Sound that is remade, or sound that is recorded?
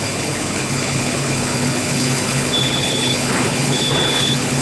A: remade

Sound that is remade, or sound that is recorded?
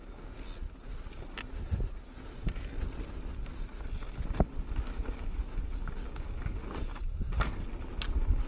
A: recorded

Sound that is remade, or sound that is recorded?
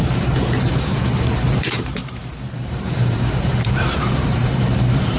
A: remade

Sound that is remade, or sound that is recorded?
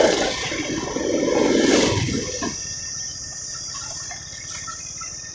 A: recorded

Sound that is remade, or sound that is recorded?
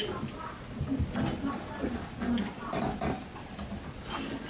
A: recorded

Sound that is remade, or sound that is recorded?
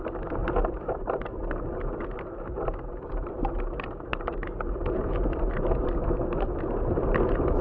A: recorded